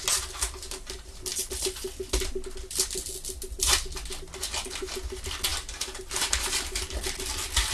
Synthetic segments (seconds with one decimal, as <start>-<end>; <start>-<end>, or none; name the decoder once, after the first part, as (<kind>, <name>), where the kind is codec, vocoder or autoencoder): none